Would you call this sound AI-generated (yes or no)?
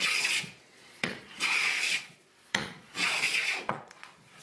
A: yes